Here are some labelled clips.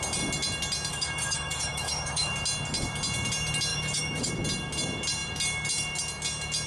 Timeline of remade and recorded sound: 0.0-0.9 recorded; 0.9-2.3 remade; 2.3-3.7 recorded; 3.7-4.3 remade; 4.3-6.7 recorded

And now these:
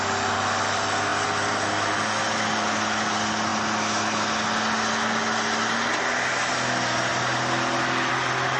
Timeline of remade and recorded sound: 0.0-8.6 recorded

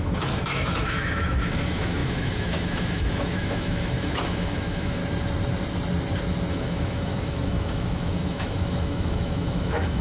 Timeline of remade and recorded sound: 0.0-5.0 remade; 5.0-6.5 recorded; 6.5-10.0 remade

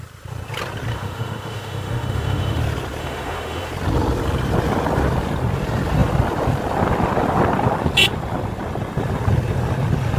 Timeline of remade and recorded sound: 0.0-0.9 recorded; 0.9-2.6 remade; 2.6-3.0 recorded; 3.0-3.7 remade; 3.7-10.2 recorded

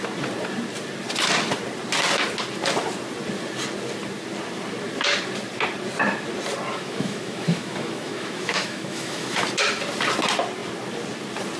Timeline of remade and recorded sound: 0.0-6.7 recorded; 6.7-9.4 remade; 9.4-11.6 recorded

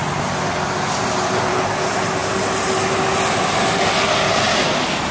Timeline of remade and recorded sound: 0.0-5.1 recorded